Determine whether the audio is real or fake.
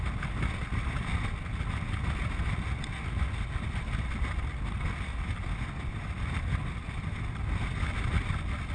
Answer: real